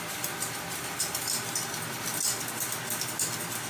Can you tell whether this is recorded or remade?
recorded